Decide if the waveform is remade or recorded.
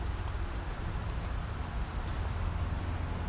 recorded